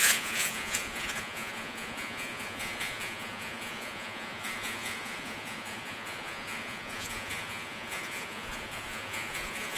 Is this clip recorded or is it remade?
remade